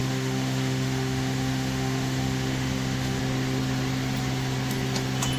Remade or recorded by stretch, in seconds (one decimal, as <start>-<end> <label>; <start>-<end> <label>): 0.0-3.2 remade; 3.2-5.4 recorded